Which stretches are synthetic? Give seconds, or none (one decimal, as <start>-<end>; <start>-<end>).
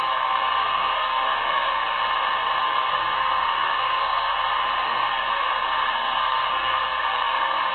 0.0-2.0; 2.6-7.7